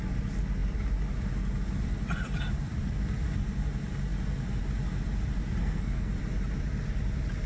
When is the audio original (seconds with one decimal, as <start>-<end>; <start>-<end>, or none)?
0.0-5.6; 6.1-7.5